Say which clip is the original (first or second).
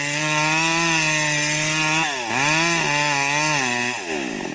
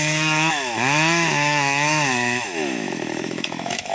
first